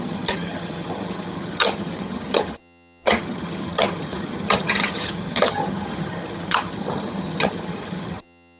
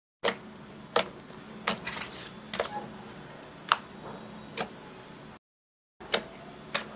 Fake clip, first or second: first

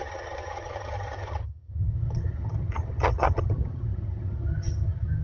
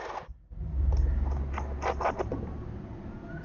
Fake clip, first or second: first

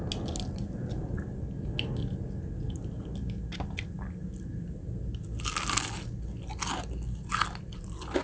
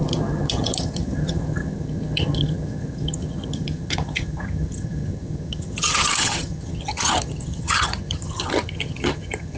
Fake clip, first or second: second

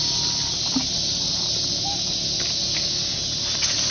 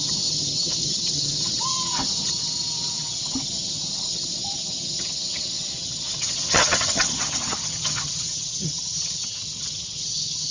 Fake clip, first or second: second